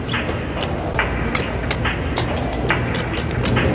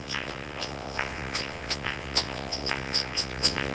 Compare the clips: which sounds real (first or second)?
first